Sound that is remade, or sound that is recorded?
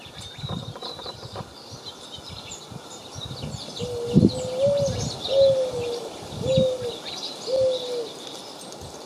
recorded